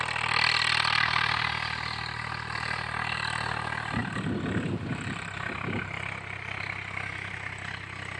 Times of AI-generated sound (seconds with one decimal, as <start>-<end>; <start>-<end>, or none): none